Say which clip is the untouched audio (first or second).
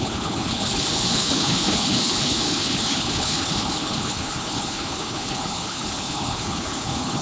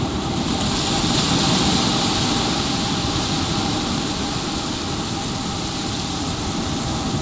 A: second